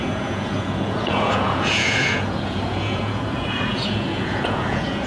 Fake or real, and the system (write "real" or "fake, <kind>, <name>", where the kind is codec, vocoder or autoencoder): fake, vocoder, Vocos